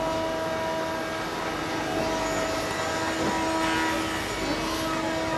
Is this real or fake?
real